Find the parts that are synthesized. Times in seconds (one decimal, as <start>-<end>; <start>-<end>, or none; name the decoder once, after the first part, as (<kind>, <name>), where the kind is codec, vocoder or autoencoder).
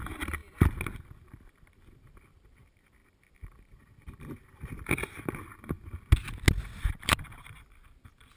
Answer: 0.0-0.4 (vocoder, BigVGAN v2); 0.9-5.5; 6.8-8.4